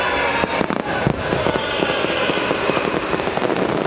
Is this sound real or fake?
real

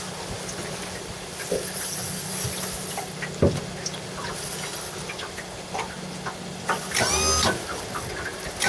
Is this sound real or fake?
real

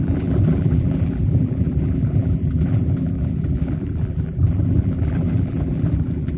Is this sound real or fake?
fake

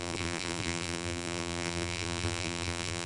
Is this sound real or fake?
fake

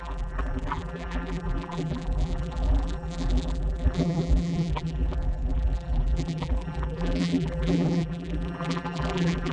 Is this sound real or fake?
fake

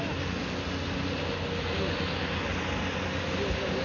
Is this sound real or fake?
real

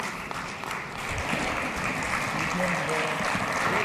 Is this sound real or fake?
real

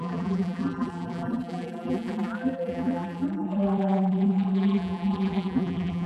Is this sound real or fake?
fake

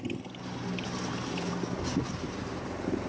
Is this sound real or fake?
real